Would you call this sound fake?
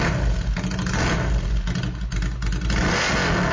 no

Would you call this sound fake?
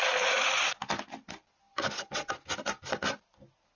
no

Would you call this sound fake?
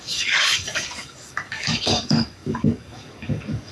yes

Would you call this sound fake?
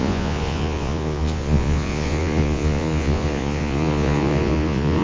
yes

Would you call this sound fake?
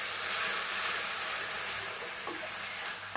no